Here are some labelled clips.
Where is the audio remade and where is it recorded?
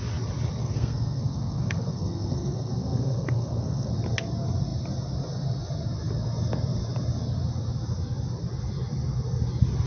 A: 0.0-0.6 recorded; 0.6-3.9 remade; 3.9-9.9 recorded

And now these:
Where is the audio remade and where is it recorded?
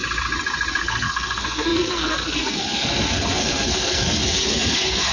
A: 0.0-0.8 recorded; 0.8-5.1 remade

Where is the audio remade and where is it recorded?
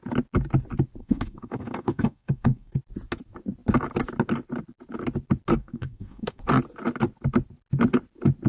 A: 0.0-1.0 recorded; 1.0-2.8 remade; 2.8-5.5 recorded; 5.5-6.4 remade; 6.4-8.5 recorded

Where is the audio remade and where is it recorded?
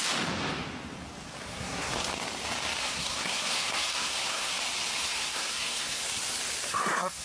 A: 0.0-1.4 recorded; 1.4-1.9 remade; 1.9-2.8 recorded; 2.8-4.5 remade; 4.5-5.0 recorded; 5.0-6.0 remade; 6.0-6.7 recorded; 6.7-7.2 remade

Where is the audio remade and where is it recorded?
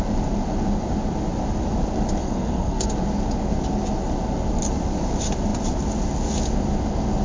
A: 0.0-2.2 recorded; 2.2-2.9 remade; 2.9-7.2 recorded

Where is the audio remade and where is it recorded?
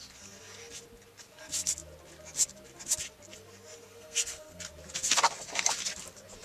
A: 0.0-3.9 recorded; 3.9-4.6 remade; 4.6-6.4 recorded